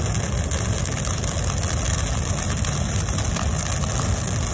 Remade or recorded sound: recorded